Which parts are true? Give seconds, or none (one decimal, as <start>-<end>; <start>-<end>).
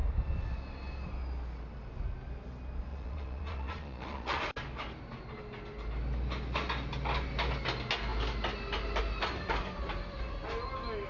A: 0.0-2.9; 4.4-11.1